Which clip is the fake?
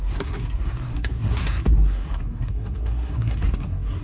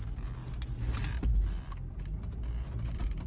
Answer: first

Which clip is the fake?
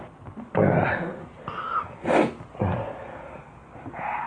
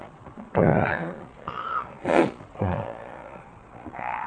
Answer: second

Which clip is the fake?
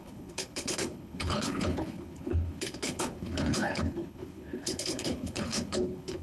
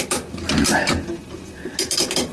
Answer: first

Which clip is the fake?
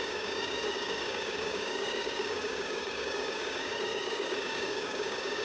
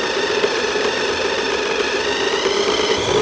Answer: first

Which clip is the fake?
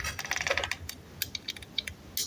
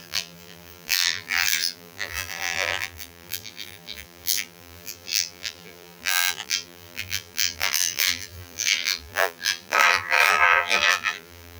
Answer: second